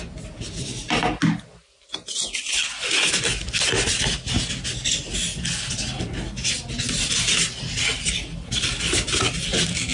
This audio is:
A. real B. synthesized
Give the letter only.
A